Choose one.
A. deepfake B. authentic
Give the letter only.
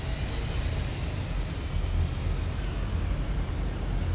B